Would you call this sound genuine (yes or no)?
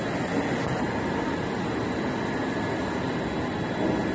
yes